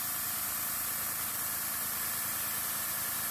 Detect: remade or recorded recorded